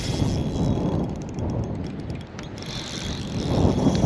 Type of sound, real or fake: real